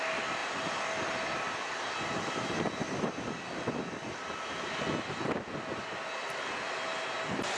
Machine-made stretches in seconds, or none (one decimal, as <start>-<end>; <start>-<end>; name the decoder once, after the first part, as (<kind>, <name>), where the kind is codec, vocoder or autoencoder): none